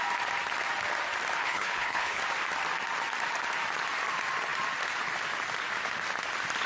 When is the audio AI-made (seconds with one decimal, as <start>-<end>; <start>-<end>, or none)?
1.4-2.2